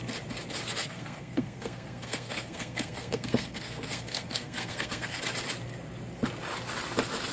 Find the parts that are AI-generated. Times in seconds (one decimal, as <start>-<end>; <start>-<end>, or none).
0.8-5.2